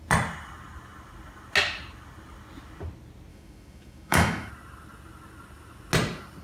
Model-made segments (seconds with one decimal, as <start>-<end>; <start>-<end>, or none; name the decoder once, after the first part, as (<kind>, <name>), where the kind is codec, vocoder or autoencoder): 3.3-4.5 (autoencoder, DAC-VAE)